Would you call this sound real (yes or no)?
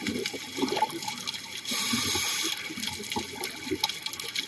yes